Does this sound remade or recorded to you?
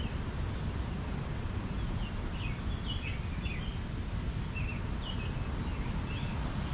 recorded